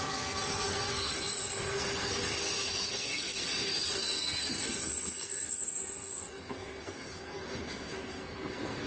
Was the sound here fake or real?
fake